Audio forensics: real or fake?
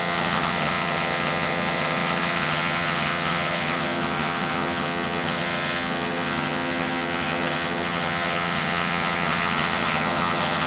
fake